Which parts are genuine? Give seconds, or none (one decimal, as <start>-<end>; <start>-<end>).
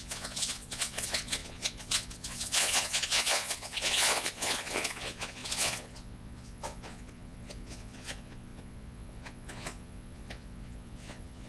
none